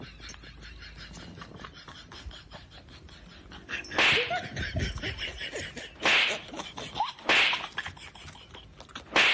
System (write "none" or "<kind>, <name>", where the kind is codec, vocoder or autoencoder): none